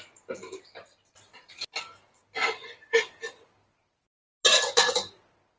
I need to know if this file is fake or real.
real